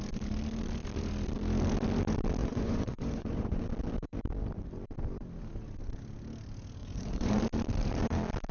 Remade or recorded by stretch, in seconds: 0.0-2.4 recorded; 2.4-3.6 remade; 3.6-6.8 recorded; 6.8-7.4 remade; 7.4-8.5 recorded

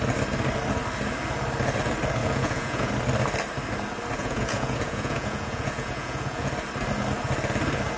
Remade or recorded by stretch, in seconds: 0.0-2.2 recorded; 2.2-2.9 remade; 2.9-4.2 recorded; 4.2-6.5 remade; 6.5-8.0 recorded

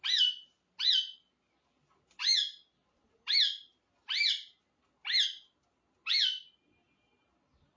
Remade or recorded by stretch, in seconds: 0.0-7.8 recorded

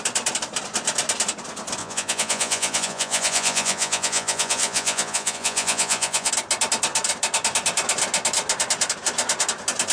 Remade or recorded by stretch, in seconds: 0.0-1.8 recorded; 1.8-6.3 remade; 6.3-9.9 recorded

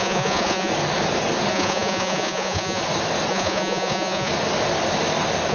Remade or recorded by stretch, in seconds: 0.0-0.7 remade; 0.7-1.5 recorded; 1.5-2.8 remade; 2.8-3.3 recorded; 3.3-4.3 remade; 4.3-5.5 recorded

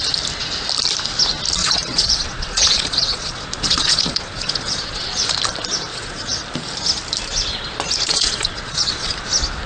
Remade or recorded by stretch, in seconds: 0.0-1.6 recorded; 1.6-5.1 remade; 5.1-5.9 recorded; 5.9-6.4 remade; 6.4-8.1 recorded; 8.1-9.1 remade; 9.1-9.7 recorded

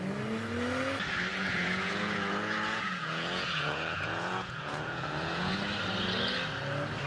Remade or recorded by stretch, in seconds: 0.0-1.3 recorded; 1.3-5.5 remade; 5.5-7.1 recorded

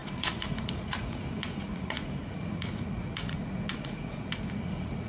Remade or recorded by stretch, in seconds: 0.0-5.1 remade